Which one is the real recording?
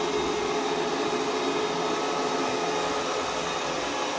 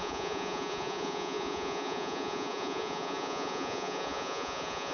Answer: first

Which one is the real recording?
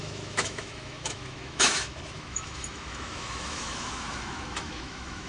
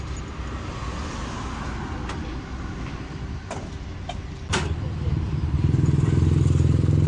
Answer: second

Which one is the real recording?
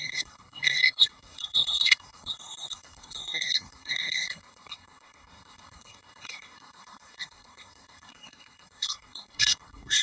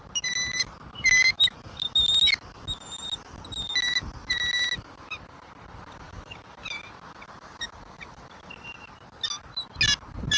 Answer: second